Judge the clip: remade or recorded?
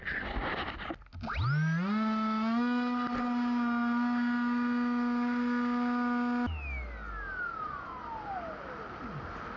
recorded